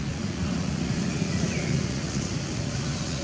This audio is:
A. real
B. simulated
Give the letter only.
B